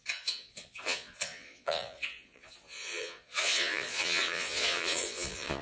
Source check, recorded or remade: remade